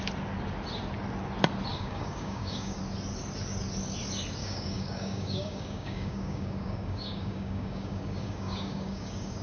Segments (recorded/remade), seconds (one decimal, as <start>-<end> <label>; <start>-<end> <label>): 0.0-1.7 recorded; 1.7-2.8 remade; 2.8-4.4 recorded; 4.4-9.4 remade